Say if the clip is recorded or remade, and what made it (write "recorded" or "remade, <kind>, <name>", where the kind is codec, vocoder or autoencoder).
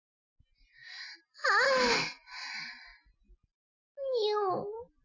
recorded